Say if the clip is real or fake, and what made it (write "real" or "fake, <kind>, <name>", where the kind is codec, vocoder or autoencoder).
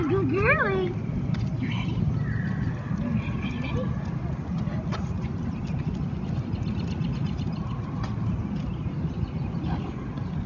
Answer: real